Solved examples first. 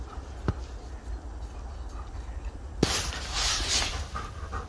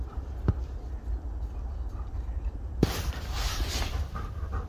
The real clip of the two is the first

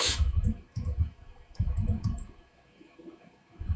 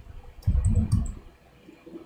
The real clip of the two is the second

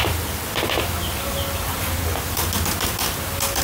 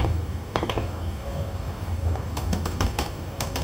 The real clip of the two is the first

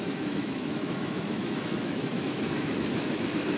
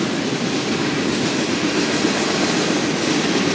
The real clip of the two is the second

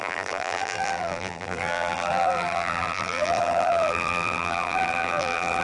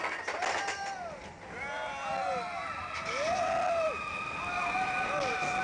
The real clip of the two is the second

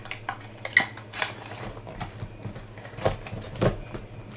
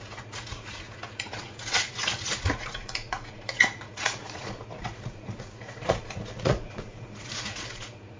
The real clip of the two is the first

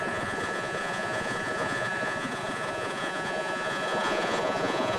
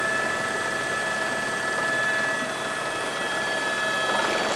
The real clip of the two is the second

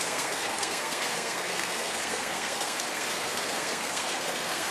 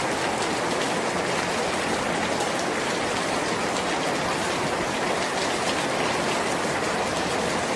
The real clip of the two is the second